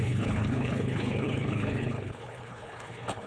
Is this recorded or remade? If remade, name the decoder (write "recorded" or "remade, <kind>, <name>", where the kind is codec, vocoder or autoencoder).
remade, codec, HILCodec